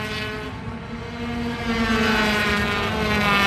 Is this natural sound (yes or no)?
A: yes